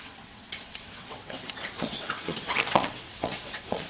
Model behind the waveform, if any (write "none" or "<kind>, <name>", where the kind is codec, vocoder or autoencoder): vocoder, WaveNeXt